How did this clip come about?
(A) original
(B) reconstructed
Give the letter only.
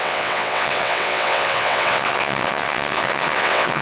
B